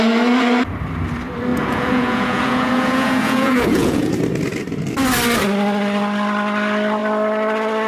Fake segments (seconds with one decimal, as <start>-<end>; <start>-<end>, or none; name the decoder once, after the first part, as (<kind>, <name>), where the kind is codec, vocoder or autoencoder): 1.5-4.1 (vocoder, Vocos)